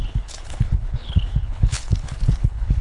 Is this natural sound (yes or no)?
no